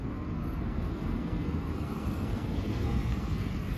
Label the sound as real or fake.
fake